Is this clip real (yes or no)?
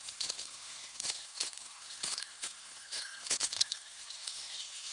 no